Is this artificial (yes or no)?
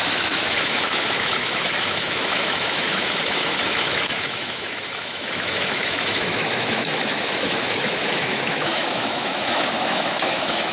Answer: yes